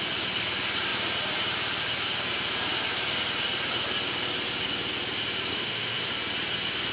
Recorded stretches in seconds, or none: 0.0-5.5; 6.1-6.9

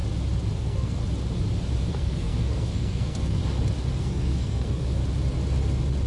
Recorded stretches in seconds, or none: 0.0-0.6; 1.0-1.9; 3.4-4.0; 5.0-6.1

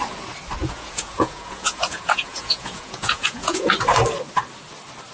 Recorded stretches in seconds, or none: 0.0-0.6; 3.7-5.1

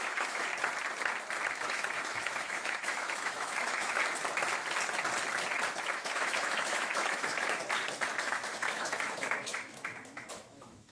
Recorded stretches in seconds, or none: 0.5-1.5; 4.0-5.8; 7.6-8.2

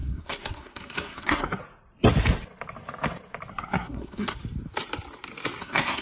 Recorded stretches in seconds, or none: 1.6-3.5; 4.4-5.6

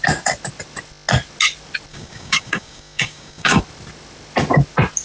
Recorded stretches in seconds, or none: 0.0-1.9; 3.6-5.0